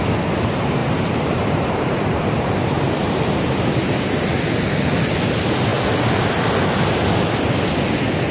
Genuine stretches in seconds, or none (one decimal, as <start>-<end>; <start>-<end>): 0.0-0.8; 4.4-8.3

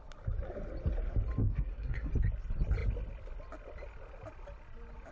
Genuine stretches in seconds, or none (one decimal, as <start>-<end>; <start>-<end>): 0.0-1.4; 2.1-5.1

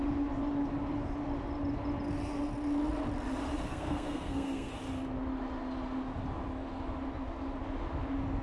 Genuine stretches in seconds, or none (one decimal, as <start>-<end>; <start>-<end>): 0.0-3.7; 4.7-8.4